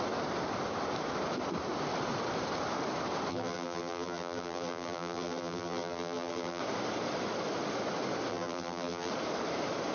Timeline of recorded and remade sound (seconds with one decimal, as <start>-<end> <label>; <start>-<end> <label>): 0.0-3.3 recorded; 3.3-6.6 remade; 6.6-8.3 recorded; 8.3-9.1 remade; 9.1-9.9 recorded